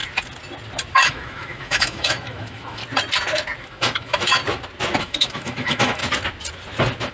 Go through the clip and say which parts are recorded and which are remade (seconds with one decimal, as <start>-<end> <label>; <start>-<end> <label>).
0.0-0.9 recorded; 0.9-2.8 remade; 2.8-3.6 recorded; 3.6-4.4 remade; 4.4-5.0 recorded; 5.0-6.0 remade; 6.0-7.1 recorded